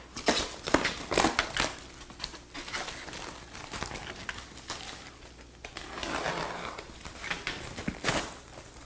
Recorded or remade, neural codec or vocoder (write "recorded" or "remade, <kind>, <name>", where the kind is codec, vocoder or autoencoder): recorded